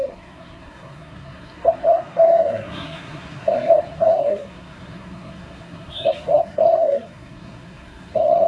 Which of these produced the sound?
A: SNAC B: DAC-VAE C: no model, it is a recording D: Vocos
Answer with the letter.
A